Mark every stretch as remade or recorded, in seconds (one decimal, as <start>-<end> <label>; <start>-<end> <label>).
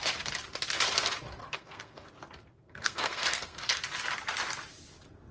0.0-1.4 recorded; 1.4-2.1 remade; 2.1-2.5 recorded; 2.5-3.8 remade; 3.8-5.3 recorded